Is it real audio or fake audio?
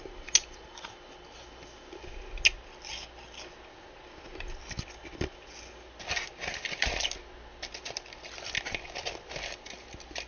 real